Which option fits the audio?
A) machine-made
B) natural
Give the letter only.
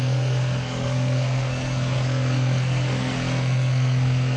A